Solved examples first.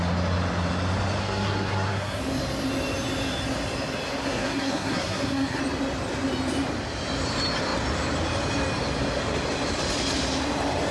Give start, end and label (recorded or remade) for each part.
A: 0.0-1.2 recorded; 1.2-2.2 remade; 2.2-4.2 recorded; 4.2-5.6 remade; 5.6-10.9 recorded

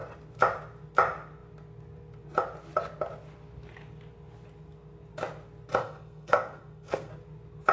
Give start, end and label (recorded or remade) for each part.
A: 0.0-5.8 recorded; 5.8-7.1 remade; 7.1-7.7 recorded